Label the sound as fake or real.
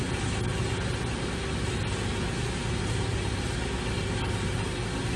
real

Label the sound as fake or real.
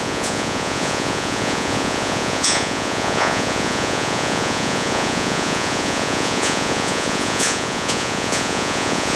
fake